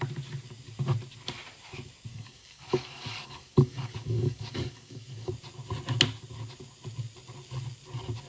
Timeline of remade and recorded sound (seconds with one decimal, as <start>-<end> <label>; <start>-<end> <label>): 0.0-2.1 recorded; 2.1-5.3 remade; 5.3-8.3 recorded

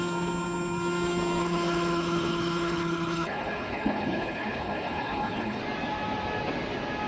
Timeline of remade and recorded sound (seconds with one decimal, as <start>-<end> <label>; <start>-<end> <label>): 0.0-1.4 recorded; 1.4-5.6 remade; 5.6-7.1 recorded

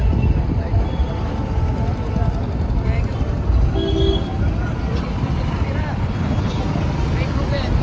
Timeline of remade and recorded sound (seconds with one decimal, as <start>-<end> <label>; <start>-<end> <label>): 0.0-6.0 recorded; 6.0-6.6 remade; 6.6-7.8 recorded

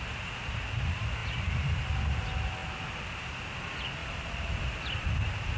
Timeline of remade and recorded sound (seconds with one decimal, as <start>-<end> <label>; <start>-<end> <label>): 0.0-1.2 recorded; 1.2-2.2 remade; 2.2-4.0 recorded; 4.0-5.6 remade

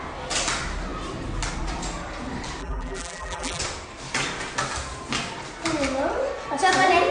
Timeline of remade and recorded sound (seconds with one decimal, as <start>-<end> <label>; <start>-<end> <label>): 0.0-2.6 recorded; 2.6-3.6 remade; 3.6-7.1 recorded

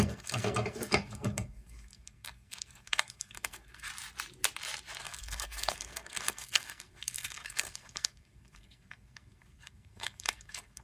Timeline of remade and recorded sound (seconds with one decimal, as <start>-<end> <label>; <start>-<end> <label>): 0.0-3.9 remade; 3.9-5.0 recorded; 5.0-10.8 remade

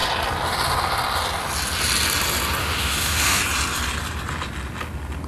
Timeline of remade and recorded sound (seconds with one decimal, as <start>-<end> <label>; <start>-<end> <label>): 0.0-2.6 recorded; 2.6-3.4 remade; 3.4-5.3 recorded

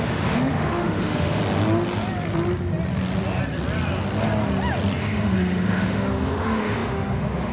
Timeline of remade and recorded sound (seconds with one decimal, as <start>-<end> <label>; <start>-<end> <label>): 0.0-1.4 remade; 1.4-5.0 recorded; 5.0-7.5 remade